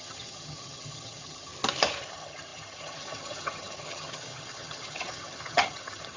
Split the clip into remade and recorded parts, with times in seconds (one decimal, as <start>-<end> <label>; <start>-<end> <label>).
0.0-1.5 remade; 1.5-2.1 recorded; 2.1-6.2 remade